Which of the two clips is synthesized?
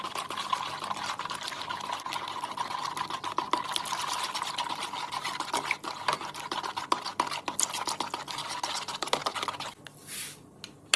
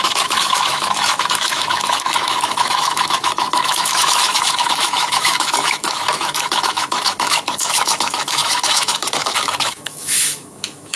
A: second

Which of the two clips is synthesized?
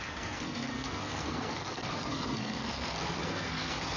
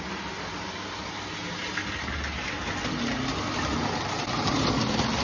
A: first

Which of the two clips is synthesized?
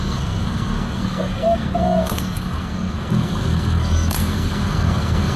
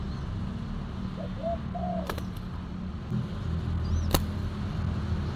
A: first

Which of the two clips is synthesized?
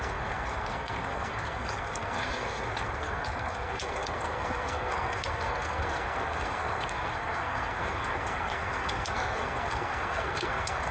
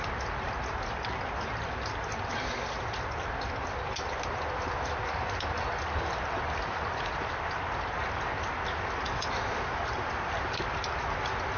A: first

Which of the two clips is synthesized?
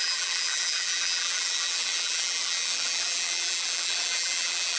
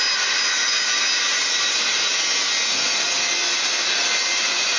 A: first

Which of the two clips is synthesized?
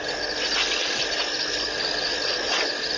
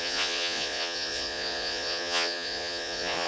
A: second